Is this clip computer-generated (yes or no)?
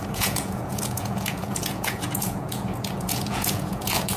yes